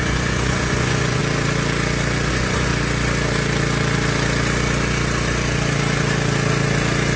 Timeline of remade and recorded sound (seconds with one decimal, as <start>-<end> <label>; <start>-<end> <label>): 0.0-1.2 remade; 1.2-2.3 recorded; 2.3-2.7 remade; 2.7-7.2 recorded